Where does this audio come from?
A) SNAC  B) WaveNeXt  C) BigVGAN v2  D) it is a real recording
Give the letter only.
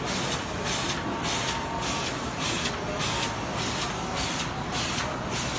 D